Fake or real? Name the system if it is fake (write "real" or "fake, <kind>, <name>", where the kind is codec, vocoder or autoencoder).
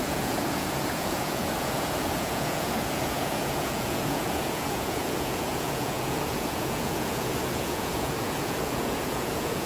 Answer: fake, vocoder, Vocos